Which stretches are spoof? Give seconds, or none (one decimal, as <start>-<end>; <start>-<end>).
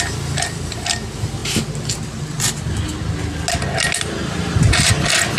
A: 4.2-4.9